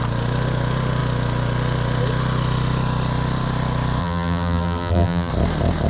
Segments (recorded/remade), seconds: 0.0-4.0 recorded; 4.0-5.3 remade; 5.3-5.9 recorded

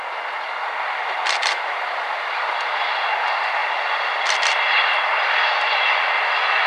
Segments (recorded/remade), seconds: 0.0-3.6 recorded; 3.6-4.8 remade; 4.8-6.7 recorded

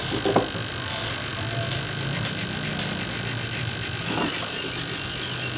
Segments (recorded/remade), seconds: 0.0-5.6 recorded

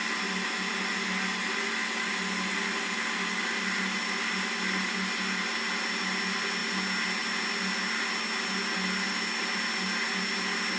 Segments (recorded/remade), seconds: 0.0-10.8 recorded